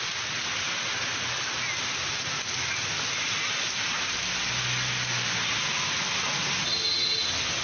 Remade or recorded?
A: recorded